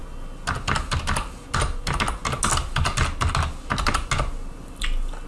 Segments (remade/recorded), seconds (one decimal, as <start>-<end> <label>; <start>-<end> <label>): 0.0-5.3 recorded